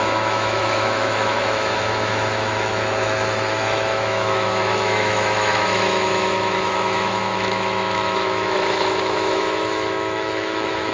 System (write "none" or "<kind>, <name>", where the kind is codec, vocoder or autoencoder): autoencoder, DAC-VAE